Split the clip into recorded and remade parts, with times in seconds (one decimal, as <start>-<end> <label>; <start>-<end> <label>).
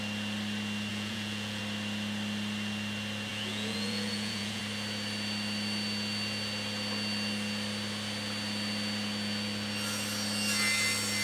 0.0-0.9 recorded; 0.9-1.6 remade; 1.6-3.3 recorded; 3.3-4.6 remade; 4.6-11.2 recorded